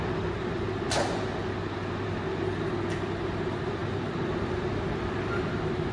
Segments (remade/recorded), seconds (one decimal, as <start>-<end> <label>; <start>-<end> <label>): 0.0-5.9 recorded